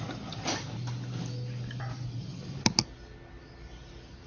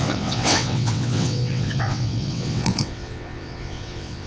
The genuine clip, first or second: first